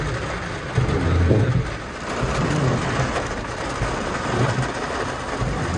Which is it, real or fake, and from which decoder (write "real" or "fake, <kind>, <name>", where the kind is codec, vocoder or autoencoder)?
real